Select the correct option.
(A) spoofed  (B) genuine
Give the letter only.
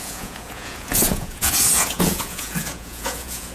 A